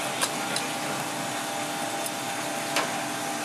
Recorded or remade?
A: recorded